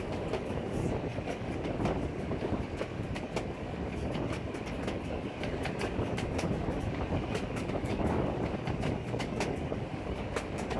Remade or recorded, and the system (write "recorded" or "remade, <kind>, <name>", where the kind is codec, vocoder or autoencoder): remade, codec, DAC